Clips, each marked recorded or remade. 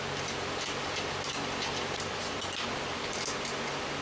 recorded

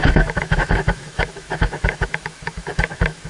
remade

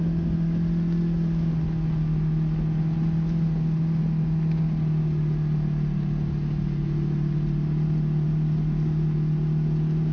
recorded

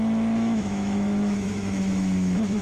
remade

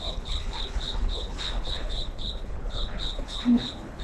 remade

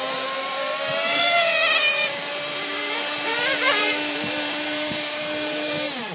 remade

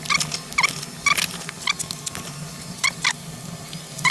recorded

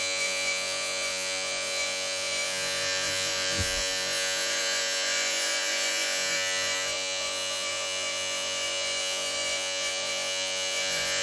remade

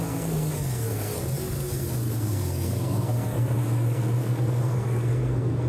remade